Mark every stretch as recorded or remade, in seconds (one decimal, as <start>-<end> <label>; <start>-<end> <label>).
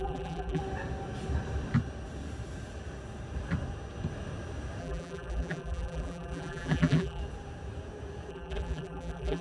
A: 0.0-0.6 remade; 0.6-4.8 recorded; 4.8-7.2 remade; 7.2-8.3 recorded; 8.3-9.4 remade